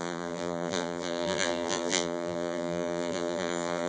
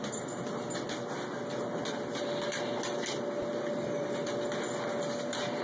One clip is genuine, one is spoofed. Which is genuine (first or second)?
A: second